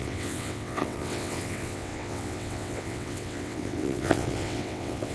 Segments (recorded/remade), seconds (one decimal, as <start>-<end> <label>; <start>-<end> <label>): 0.0-5.1 remade